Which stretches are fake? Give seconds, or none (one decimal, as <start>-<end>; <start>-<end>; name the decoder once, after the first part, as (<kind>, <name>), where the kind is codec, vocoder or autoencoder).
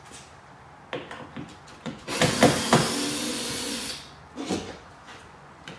1.5-2.4 (vocoder, Vocos); 3.3-5.8